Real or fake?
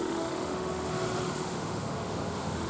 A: fake